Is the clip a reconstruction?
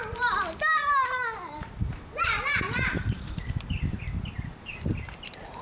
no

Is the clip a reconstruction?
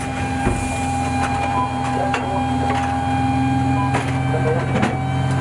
no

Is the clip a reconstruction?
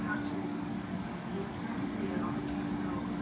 yes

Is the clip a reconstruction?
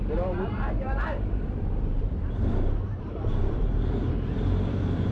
yes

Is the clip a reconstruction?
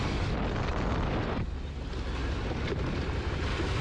no